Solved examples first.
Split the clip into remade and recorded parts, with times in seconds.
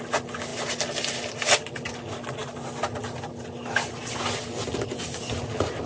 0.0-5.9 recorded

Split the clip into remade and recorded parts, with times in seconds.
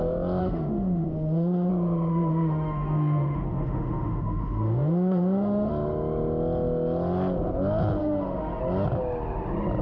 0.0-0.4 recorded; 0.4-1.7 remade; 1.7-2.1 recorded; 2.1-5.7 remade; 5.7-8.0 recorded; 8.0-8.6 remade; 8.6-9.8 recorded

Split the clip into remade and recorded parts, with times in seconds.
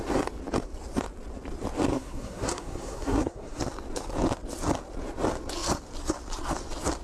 0.0-1.9 recorded; 1.9-3.6 remade; 3.6-7.0 recorded